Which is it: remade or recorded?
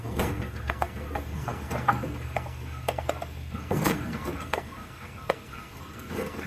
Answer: remade